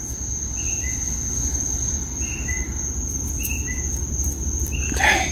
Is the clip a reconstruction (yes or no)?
no